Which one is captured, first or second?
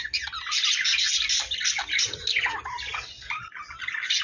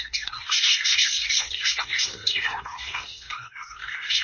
first